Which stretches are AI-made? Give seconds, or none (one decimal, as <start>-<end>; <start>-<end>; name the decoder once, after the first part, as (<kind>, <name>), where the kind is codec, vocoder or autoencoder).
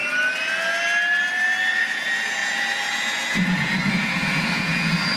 1.7-5.2 (vocoder, Vocos)